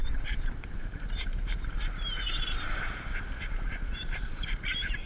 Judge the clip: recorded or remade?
remade